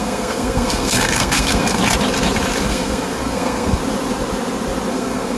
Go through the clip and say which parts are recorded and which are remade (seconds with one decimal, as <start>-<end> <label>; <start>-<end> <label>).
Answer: 0.0-1.8 remade; 1.8-2.7 recorded; 2.7-3.8 remade; 3.8-4.9 recorded; 4.9-5.4 remade